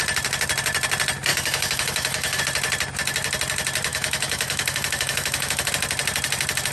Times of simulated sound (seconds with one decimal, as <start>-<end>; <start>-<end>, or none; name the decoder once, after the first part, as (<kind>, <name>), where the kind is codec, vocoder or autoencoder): 1.3-2.4 (autoencoder, DAC-VAE); 3.9-5.7